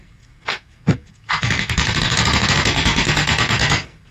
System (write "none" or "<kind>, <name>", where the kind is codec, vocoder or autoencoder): codec, SNAC